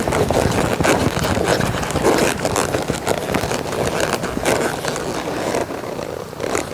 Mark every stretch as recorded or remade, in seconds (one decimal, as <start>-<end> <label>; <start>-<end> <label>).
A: 0.0-1.5 recorded; 1.5-2.2 remade; 2.2-5.6 recorded; 5.6-6.7 remade